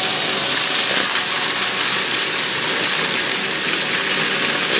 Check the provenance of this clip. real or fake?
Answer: real